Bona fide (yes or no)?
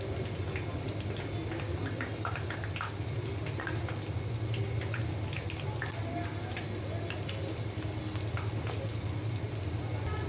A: yes